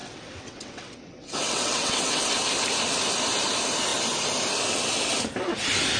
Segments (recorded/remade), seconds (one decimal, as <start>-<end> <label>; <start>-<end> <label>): 0.0-2.2 remade; 2.2-6.0 recorded